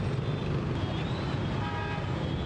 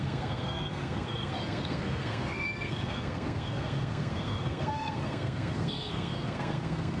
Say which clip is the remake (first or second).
second